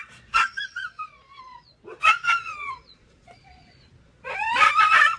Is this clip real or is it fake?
fake